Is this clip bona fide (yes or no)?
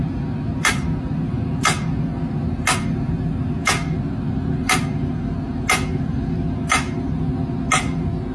yes